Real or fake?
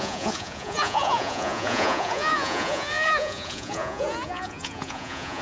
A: fake